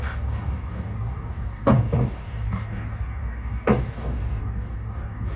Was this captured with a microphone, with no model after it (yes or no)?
no